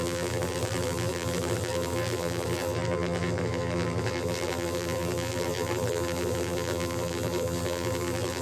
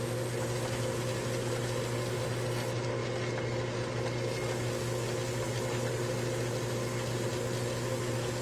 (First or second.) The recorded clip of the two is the second